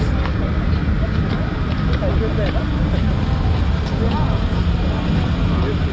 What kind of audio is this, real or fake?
real